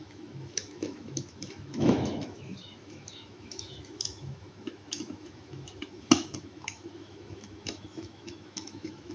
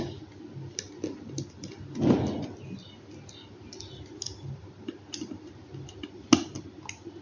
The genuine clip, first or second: second